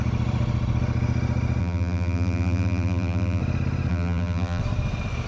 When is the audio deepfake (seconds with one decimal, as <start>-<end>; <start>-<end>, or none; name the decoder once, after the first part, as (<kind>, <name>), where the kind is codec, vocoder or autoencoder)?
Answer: 1.6-3.4 (vocoder, BigVGAN v2); 3.9-4.6